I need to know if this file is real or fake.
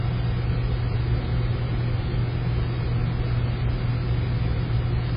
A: real